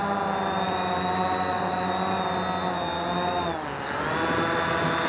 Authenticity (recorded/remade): recorded